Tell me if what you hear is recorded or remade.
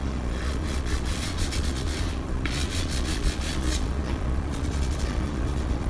remade